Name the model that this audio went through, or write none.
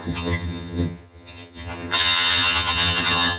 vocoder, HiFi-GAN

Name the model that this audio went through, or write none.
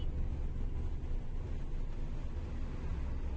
none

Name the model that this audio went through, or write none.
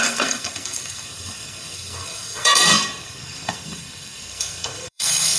codec, SNAC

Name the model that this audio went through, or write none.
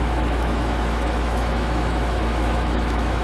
autoencoder, DAC-VAE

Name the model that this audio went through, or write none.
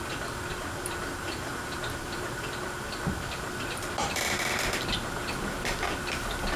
vocoder, BigVGAN v2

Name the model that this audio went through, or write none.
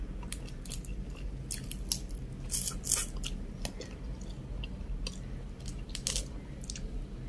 none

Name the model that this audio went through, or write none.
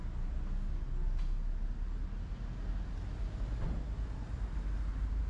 none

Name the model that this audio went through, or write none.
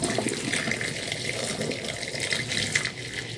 none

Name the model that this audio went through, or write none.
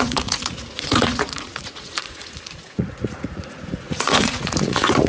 vocoder, Vocos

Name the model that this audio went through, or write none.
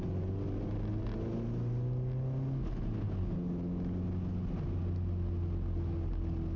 none